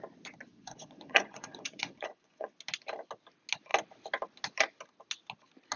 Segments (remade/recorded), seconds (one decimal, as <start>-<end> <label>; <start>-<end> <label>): 0.0-0.5 recorded; 0.5-2.5 remade; 2.5-5.8 recorded

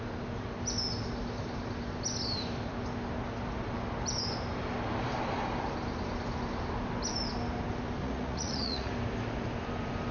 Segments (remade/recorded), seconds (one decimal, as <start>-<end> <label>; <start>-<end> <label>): 0.0-8.0 recorded; 8.0-8.9 remade; 8.9-10.1 recorded

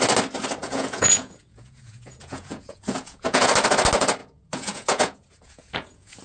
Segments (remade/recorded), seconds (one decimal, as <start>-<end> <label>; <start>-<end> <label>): 0.0-0.6 recorded; 0.6-3.5 remade; 3.5-4.2 recorded; 4.2-6.2 remade

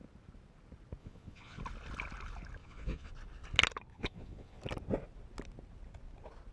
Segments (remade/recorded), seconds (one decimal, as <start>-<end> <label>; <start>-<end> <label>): 0.0-1.0 recorded; 1.0-1.6 remade; 1.6-2.6 recorded; 2.6-3.1 remade; 3.1-3.9 recorded; 3.9-4.6 remade; 4.6-6.5 recorded

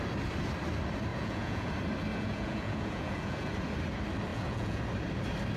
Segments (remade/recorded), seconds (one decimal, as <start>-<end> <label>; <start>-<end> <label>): 0.0-1.1 recorded; 1.1-1.7 remade; 1.7-2.1 recorded; 2.1-3.5 remade; 3.5-4.3 recorded; 4.3-4.8 remade; 4.8-5.6 recorded

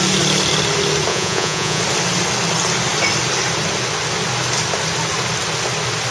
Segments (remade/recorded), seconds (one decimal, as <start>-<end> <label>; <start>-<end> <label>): 0.0-1.1 recorded; 1.1-1.8 remade; 1.8-6.1 recorded

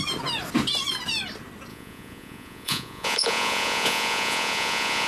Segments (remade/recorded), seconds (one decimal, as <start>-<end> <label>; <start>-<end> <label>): 0.0-1.7 recorded; 1.7-5.1 remade

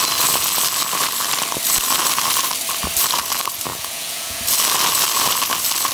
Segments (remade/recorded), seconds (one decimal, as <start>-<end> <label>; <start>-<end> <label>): 0.0-3.7 recorded; 3.7-4.4 remade; 4.4-5.9 recorded